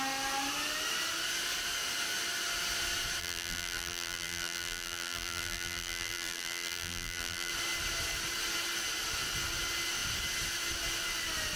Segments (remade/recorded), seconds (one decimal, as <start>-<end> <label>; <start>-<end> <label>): 0.0-3.2 recorded; 3.2-7.5 remade; 7.5-11.6 recorded